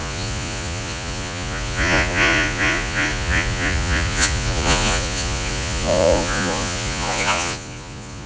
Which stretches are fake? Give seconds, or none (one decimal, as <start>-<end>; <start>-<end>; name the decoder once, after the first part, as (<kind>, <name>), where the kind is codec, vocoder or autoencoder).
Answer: 0.0-8.3 (vocoder, Vocos)